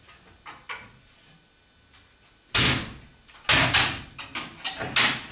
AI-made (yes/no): no